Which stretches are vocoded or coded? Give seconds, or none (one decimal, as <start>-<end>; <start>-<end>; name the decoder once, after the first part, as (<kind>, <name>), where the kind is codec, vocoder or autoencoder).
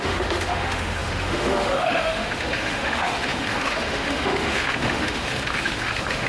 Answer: 0.0-6.3 (autoencoder, DAC-VAE)